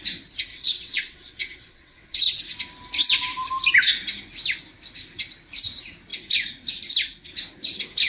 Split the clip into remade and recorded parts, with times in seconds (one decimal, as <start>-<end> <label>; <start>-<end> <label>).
0.0-0.5 recorded; 0.5-2.2 remade; 2.2-8.1 recorded